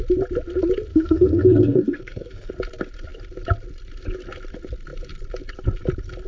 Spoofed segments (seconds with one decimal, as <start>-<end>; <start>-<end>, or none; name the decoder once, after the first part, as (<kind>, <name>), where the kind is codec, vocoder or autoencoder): 0.9-2.5 (codec, SNAC)